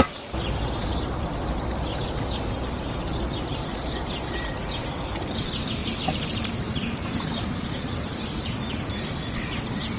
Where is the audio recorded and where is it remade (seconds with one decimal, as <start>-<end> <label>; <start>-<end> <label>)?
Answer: 0.0-0.9 recorded; 0.9-1.6 remade; 1.6-3.5 recorded; 3.5-4.3 remade; 4.3-5.8 recorded; 5.8-7.6 remade; 7.6-10.0 recorded